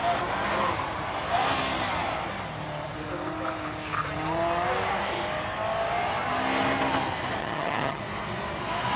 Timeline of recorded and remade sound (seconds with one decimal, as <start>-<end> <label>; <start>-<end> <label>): 0.0-7.4 recorded; 7.4-8.0 remade; 8.0-9.0 recorded